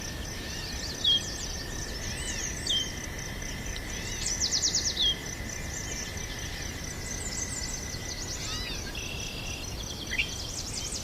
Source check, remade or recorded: recorded